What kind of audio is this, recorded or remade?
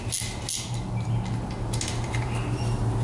recorded